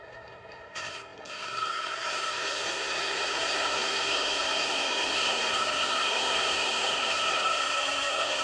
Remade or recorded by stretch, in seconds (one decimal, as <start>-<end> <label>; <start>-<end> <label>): 0.0-8.4 remade